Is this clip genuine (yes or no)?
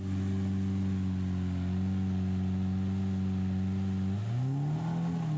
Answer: yes